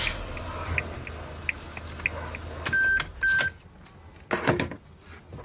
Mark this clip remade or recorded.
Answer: recorded